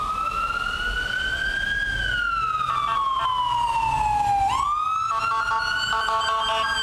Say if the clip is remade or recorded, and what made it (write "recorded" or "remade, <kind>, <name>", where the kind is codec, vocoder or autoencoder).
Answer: recorded